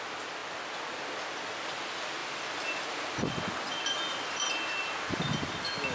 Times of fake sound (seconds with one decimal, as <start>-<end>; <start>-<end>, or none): none